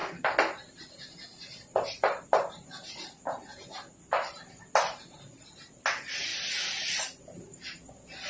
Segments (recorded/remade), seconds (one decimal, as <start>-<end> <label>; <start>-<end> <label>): 0.0-8.3 recorded